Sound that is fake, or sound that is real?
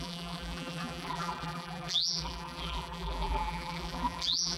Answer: fake